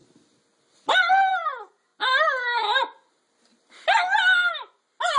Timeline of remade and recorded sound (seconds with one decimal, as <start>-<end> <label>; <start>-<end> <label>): 0.0-5.2 recorded